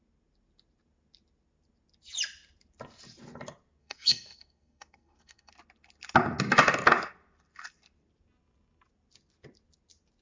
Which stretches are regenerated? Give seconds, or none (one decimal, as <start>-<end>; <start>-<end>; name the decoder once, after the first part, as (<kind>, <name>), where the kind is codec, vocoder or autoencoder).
3.8-5.5 (codec, SNAC)